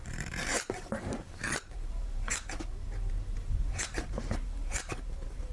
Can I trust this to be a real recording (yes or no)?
no